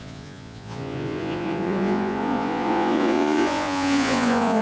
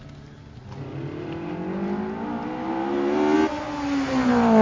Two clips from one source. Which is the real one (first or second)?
second